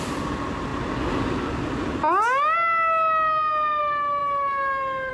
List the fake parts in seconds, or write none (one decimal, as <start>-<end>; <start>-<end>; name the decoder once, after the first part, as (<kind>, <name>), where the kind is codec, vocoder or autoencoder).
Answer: none

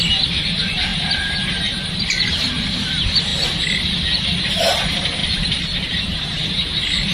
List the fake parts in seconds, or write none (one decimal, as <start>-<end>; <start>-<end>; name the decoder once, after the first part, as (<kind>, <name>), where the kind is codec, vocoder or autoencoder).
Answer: 0.0-3.3 (vocoder, BigVGAN v2); 4.0-5.2; 6.0-7.1

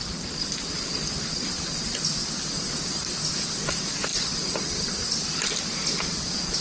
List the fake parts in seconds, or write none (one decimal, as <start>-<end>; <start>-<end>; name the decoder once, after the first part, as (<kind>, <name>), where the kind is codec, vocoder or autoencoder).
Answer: none

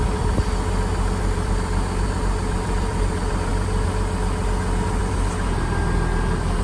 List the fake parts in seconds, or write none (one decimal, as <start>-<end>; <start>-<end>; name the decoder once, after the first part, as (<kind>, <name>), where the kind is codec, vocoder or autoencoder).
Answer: 1.2-3.5 (vocoder, BigVGAN v2); 5.0-6.6

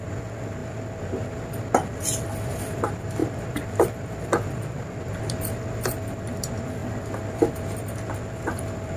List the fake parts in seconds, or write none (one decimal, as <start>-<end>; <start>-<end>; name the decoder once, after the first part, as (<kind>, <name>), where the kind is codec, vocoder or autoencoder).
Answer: 0.0-0.6 (vocoder, BigVGAN v2); 2.6-3.2; 5.7-6.8; 7.5-9.0

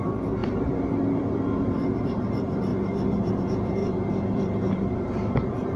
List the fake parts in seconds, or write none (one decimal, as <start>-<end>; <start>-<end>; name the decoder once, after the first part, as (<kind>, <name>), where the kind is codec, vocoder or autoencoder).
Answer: 0.0-5.8 (vocoder, BigVGAN v2)

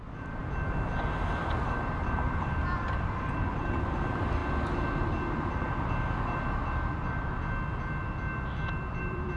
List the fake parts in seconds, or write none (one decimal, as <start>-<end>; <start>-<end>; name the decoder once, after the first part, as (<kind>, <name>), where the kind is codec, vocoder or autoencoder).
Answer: 0.0-4.4 (vocoder, BigVGAN v2); 9.0-9.4

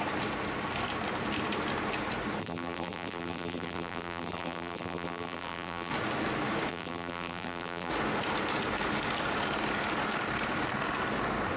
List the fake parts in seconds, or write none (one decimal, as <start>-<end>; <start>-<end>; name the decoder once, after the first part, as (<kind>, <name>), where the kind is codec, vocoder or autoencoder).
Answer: 2.4-5.9 (vocoder, BigVGAN v2); 6.7-7.9